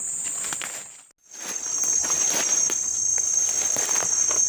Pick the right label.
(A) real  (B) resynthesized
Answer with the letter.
A